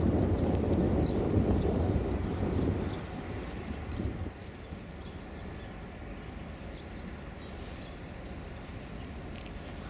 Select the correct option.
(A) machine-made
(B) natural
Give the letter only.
B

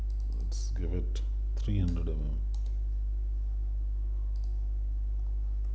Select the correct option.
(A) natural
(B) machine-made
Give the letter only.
A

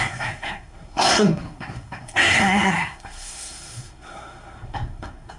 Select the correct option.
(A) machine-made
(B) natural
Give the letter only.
A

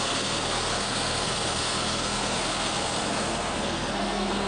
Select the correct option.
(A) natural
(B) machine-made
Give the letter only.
B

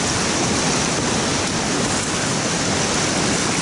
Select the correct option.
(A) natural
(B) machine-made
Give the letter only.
A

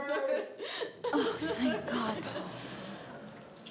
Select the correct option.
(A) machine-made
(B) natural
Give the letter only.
B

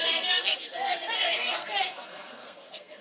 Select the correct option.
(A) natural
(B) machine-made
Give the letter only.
B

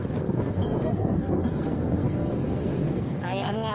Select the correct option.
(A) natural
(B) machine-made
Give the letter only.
B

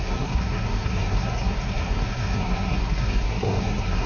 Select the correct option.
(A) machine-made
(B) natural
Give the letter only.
A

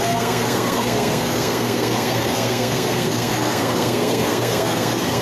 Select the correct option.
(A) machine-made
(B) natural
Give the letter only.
A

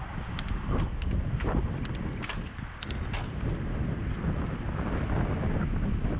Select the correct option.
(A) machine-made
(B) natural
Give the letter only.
B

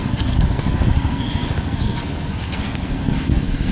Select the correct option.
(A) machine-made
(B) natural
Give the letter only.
A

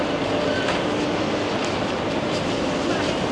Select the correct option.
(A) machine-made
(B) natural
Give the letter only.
B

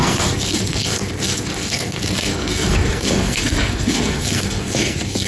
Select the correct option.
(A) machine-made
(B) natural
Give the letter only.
A